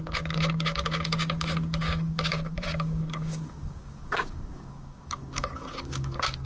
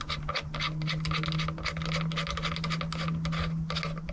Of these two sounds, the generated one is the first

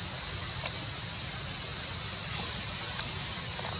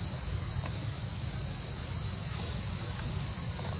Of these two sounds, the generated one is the second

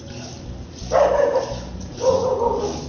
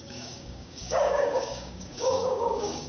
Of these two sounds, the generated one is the second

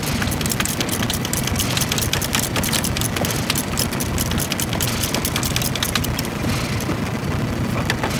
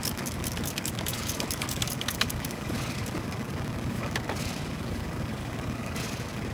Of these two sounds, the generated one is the second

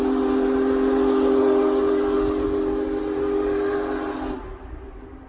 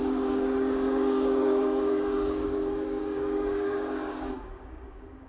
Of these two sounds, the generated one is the second